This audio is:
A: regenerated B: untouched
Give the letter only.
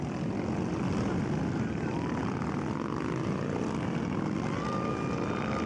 B